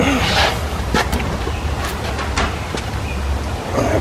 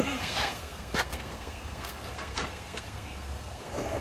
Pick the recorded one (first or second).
first